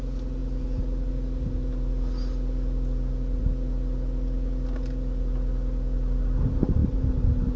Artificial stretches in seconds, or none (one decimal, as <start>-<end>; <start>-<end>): none